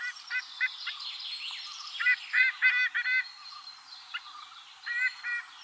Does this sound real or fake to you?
real